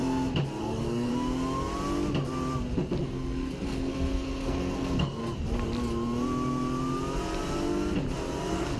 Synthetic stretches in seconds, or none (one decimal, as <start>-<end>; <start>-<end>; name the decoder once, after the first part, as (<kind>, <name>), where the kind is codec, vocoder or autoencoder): 0.6-1.1 (codec, SNAC); 3.0-5.2; 8.4-8.8